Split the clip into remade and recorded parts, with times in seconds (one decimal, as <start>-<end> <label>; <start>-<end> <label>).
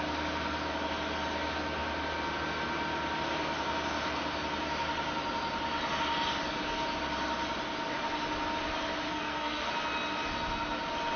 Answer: 0.0-9.1 recorded; 9.1-9.7 remade; 9.7-11.2 recorded